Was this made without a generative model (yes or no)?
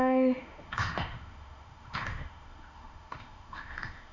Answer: no